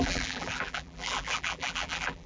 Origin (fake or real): fake